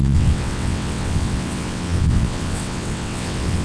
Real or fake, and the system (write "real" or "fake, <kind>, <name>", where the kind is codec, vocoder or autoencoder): fake, vocoder, WaveNeXt